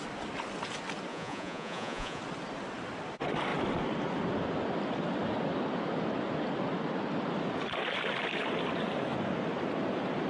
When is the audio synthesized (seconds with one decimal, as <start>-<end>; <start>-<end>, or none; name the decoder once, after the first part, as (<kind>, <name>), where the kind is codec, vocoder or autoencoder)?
1.1-2.2 (vocoder, Vocos)